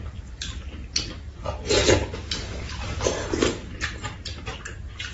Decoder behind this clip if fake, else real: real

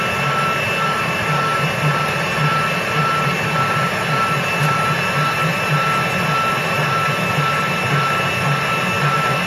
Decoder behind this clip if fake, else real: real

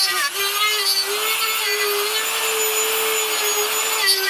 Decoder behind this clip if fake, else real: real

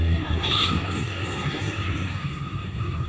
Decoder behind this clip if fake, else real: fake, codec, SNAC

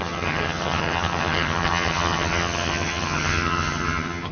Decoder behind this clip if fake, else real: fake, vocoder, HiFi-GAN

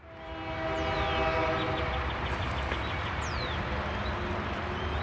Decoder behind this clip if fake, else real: real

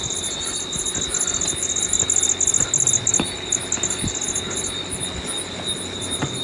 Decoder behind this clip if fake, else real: real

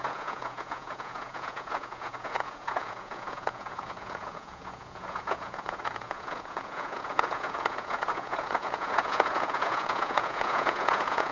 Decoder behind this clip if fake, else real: fake, vocoder, Vocos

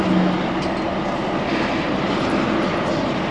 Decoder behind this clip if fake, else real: real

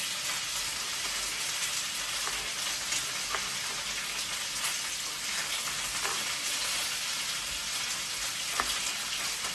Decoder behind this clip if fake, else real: real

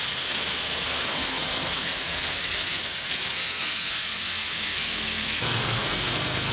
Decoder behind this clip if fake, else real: fake, codec, SNAC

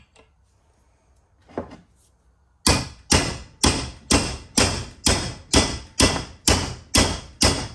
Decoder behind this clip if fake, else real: real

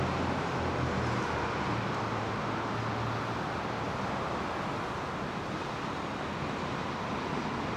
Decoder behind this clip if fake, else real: real